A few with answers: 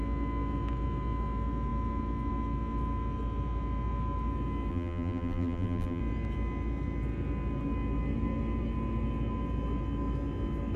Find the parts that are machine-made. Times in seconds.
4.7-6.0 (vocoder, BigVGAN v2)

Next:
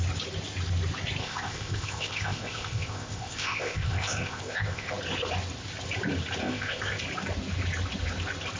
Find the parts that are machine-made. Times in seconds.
1.2-4.9 (codec, ZipCodec); 6.4-7.0

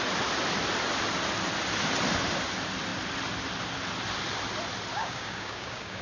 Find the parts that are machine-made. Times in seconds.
4.9-6.0 (codec, DAC)